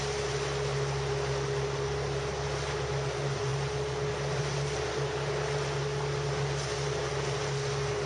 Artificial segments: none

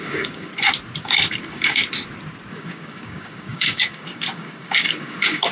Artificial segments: 0.0-0.5 (codec, DAC); 1.0-1.8; 2.5-5.5

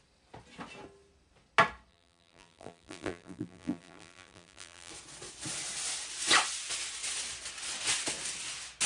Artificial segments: 1.9-4.9 (vocoder, BigVGAN v2)

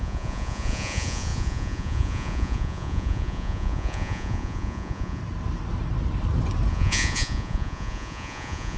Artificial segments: 0.0-5.2 (vocoder, Vocos); 6.7-8.8

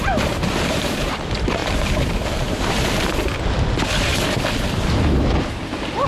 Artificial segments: 0.0-3.3 (vocoder, BigVGAN v2); 5.6-6.1

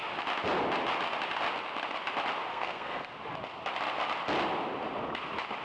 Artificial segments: 2.5-3.1 (codec, SNAC)

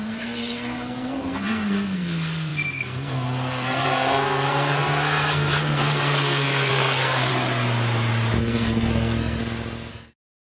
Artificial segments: 0.0-7.3 (codec, SNAC); 8.4-9.4; 9.9-10.4

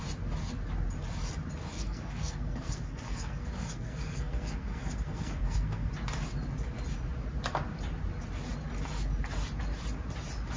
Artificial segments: 1.7-5.9 (codec, SNAC)